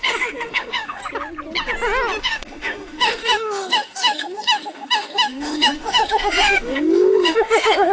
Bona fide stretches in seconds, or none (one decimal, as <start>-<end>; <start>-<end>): 1.0-2.2